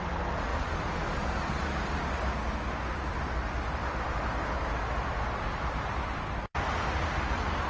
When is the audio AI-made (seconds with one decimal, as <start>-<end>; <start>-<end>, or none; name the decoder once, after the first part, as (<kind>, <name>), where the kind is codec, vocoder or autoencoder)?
none